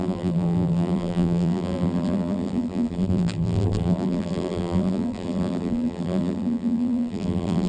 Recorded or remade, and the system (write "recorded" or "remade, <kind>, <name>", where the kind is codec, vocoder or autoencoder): remade, vocoder, BigVGAN v2